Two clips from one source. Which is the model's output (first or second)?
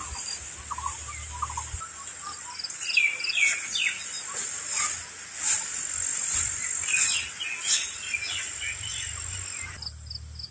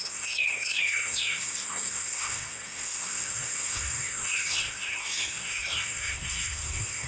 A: second